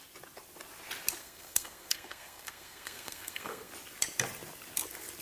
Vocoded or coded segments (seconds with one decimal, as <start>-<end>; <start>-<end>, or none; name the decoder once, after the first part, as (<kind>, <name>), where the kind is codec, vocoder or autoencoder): 1.2-3.7 (codec, SNAC)